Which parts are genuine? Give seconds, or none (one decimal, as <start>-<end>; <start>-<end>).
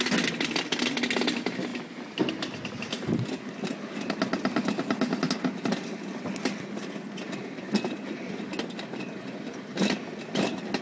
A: 0.0-10.8